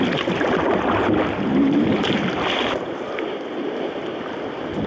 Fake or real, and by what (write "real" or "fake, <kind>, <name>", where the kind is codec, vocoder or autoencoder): real